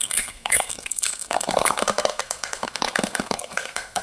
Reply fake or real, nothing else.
fake